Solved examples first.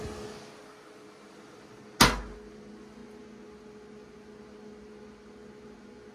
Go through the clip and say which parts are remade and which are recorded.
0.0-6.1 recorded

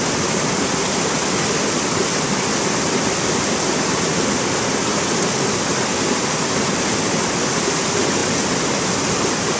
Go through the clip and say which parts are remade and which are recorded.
0.0-9.6 recorded

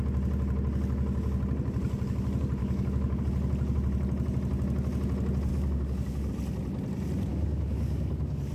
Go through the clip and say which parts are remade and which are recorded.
0.0-2.6 recorded; 2.6-3.2 remade; 3.2-5.5 recorded; 5.5-6.3 remade; 6.3-7.3 recorded; 7.3-8.5 remade

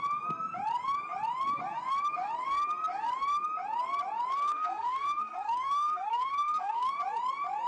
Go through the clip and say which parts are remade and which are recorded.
0.0-4.3 recorded; 4.3-6.9 remade; 6.9-7.7 recorded

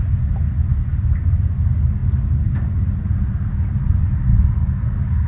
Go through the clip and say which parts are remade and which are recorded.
0.0-4.3 recorded; 4.3-5.3 remade

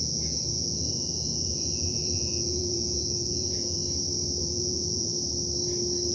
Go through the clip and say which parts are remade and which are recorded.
0.0-3.8 remade; 3.8-4.4 recorded; 4.4-5.1 remade; 5.1-6.1 recorded

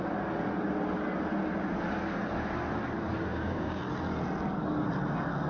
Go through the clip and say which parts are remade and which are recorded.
0.0-3.3 recorded; 3.3-3.8 remade; 3.8-5.5 recorded